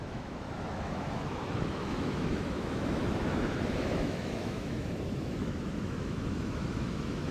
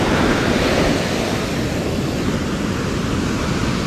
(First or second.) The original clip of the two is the second